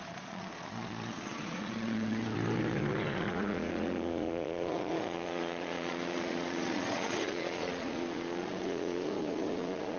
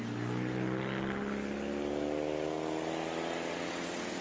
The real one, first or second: second